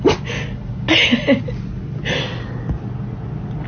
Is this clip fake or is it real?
real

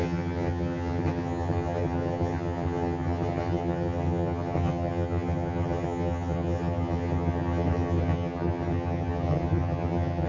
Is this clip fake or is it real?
fake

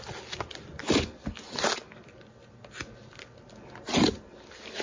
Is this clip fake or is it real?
real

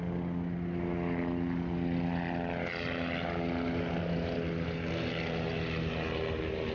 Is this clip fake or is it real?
real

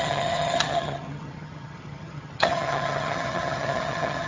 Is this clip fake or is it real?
fake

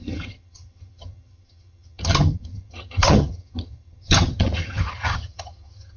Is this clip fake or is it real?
fake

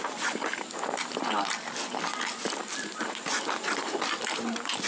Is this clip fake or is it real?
real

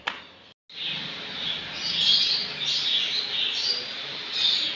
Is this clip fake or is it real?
real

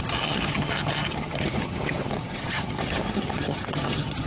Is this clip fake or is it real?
fake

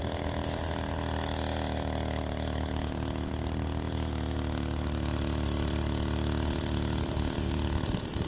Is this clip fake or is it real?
real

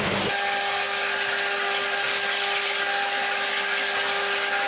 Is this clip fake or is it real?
real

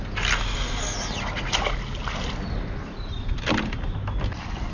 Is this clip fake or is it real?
real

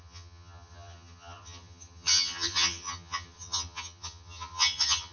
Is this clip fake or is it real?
fake